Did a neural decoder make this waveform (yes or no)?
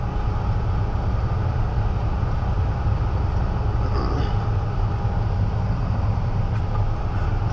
no